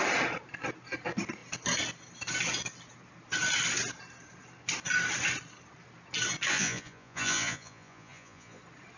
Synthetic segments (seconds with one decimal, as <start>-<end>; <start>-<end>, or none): 6.5-8.6